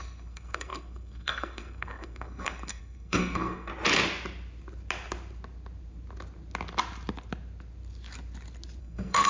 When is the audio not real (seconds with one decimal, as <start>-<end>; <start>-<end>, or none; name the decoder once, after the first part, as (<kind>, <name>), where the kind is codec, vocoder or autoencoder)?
0.0-3.7 (codec, SNAC); 8.8-9.3